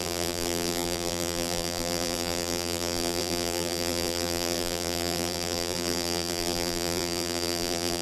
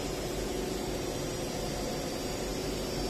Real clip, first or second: second